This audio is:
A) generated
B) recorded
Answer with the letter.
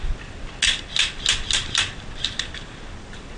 B